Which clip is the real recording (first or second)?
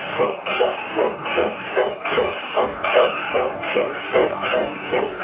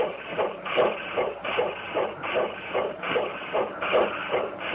second